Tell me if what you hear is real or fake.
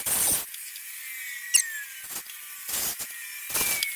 real